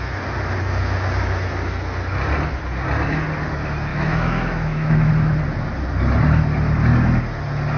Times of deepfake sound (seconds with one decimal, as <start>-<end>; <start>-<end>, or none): 3.9-5.1